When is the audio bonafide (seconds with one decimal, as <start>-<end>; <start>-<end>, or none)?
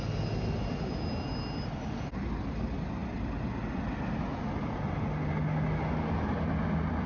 0.0-7.1